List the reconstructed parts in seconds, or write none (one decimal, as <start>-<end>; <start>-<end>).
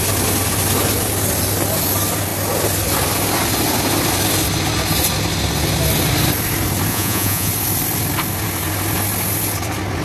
6.9-7.5